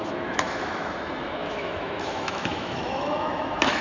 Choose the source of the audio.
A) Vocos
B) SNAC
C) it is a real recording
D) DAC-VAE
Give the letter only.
D